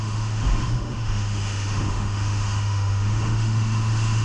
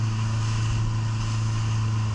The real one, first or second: second